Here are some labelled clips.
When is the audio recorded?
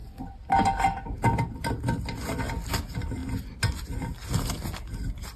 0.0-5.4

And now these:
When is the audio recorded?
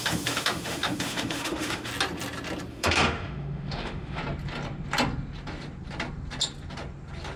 1.9-2.7; 4.2-7.4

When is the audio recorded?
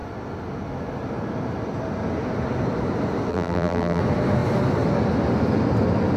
0.0-3.3; 4.0-6.2